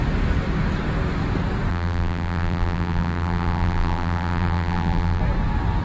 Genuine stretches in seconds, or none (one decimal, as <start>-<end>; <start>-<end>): 0.0-1.7; 5.2-5.8